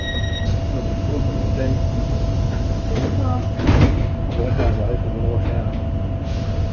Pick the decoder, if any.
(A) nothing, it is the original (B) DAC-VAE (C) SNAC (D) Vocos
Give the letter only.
A